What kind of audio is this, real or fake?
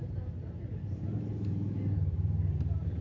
real